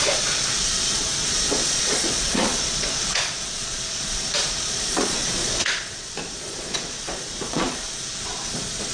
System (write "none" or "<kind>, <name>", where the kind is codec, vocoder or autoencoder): vocoder, Vocos